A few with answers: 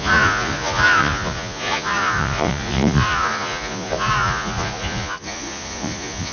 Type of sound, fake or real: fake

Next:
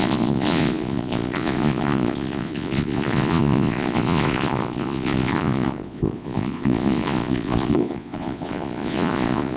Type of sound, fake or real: fake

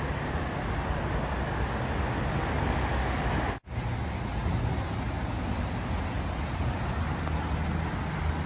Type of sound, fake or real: real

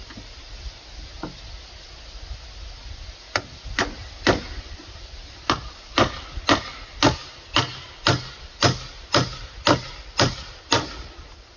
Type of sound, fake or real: real